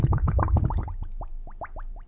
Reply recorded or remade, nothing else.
remade